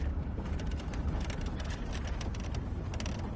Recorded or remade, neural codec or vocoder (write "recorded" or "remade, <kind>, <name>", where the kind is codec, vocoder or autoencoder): recorded